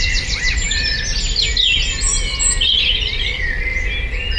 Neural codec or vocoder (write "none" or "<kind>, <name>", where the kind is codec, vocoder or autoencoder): none